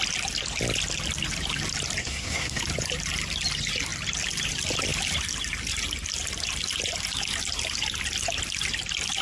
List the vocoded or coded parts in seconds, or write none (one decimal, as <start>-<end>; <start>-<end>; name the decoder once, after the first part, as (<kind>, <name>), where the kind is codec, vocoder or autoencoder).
2.0-2.6 (codec, SNAC)